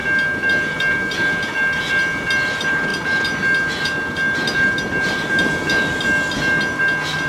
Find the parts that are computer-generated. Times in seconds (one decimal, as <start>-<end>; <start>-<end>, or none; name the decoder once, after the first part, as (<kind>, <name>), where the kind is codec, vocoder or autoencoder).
none